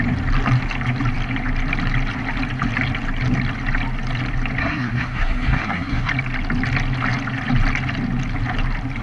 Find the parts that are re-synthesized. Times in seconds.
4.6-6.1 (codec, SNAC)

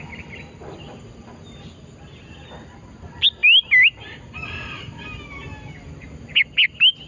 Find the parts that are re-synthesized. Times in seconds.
none

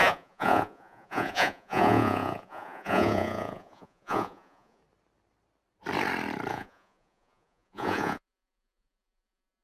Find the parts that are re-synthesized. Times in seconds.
0.0-4.8 (vocoder, Vocos); 6.5-9.6

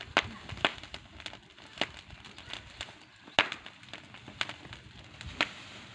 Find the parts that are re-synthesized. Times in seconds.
none

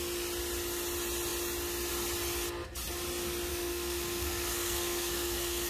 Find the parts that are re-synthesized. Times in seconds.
3.5-5.7 (codec, SNAC)

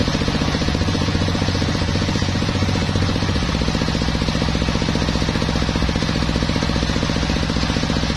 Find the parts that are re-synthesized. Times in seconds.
0.0-3.5 (vocoder, Vocos)

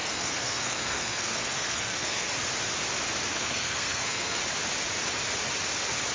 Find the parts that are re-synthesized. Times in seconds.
0.0-2.3 (codec, SNAC); 3.3-4.4

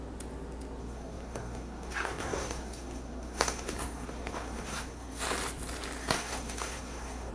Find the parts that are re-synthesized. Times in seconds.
0.8-5.2 (codec, SNAC); 6.0-7.3